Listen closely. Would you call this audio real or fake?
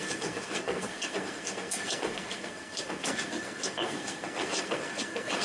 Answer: fake